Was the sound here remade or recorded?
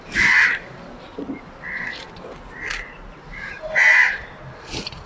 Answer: recorded